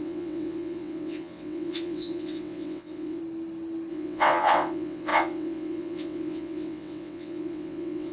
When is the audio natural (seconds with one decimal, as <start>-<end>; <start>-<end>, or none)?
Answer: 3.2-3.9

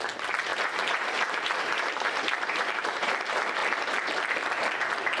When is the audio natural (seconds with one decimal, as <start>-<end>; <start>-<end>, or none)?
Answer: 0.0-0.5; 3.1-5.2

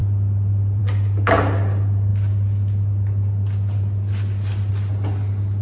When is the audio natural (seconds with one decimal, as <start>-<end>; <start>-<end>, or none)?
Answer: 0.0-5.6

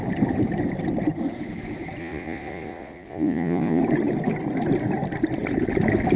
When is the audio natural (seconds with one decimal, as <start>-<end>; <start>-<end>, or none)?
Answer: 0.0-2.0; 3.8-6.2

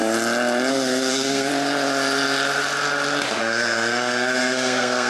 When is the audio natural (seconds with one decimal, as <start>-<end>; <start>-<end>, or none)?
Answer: 0.0-0.7; 1.5-3.4